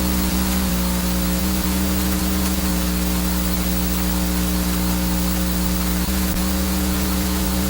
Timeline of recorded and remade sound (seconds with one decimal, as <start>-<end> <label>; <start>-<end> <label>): 0.0-0.7 remade; 0.7-1.4 recorded; 1.4-2.7 remade; 2.7-6.1 recorded; 6.1-7.7 remade